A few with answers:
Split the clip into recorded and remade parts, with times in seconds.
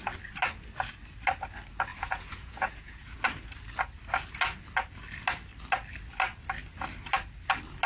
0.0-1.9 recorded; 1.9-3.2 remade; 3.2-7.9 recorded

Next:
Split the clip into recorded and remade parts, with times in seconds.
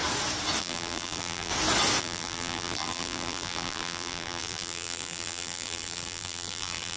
0.0-0.6 recorded; 0.6-1.5 remade; 1.5-2.0 recorded; 2.0-7.0 remade